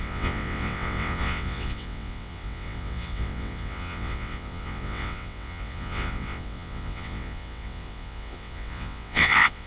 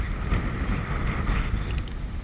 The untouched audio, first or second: second